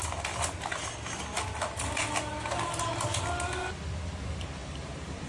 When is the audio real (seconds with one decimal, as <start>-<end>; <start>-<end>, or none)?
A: 0.0-4.6